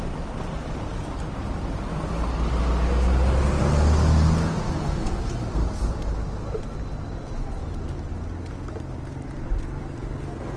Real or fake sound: real